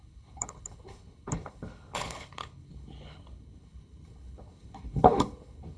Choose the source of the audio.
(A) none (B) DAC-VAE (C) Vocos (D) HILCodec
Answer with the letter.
D